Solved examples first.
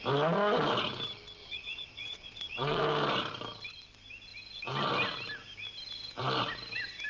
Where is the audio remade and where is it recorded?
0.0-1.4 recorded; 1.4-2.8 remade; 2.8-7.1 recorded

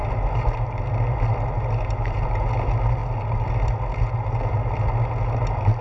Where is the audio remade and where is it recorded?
0.0-5.8 recorded